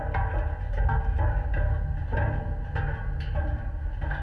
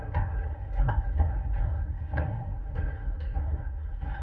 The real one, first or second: first